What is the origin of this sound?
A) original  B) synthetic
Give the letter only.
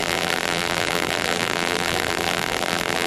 B